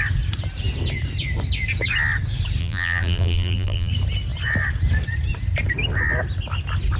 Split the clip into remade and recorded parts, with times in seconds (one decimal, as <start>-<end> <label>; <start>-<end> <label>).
0.0-2.6 recorded; 2.6-3.9 remade; 3.9-7.0 recorded